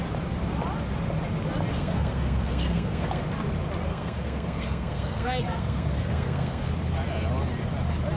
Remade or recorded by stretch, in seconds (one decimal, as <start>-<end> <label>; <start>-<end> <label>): 0.0-1.7 recorded; 1.7-3.2 remade; 3.2-3.9 recorded; 3.9-6.7 remade; 6.7-8.2 recorded